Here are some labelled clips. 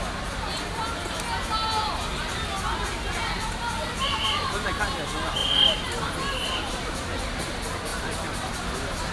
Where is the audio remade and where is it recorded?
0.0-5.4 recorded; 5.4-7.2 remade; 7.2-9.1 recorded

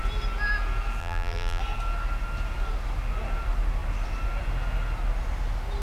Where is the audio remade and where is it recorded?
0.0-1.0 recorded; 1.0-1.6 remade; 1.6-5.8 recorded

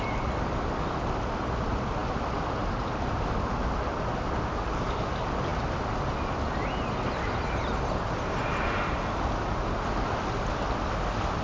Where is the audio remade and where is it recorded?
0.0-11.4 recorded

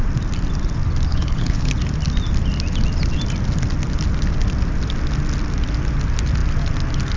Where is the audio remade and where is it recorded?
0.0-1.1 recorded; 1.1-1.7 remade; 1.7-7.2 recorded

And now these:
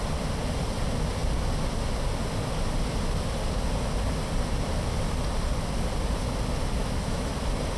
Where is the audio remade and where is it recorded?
0.0-6.8 recorded; 6.8-7.3 remade; 7.3-7.8 recorded

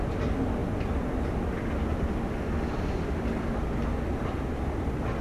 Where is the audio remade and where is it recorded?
0.0-5.2 recorded

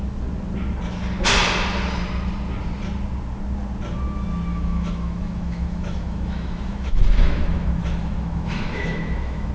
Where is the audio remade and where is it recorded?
0.0-4.5 recorded; 4.5-9.5 remade